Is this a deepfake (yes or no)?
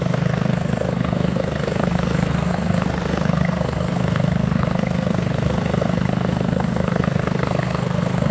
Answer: yes